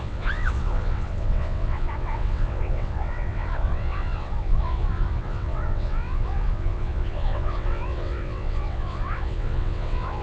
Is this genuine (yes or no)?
no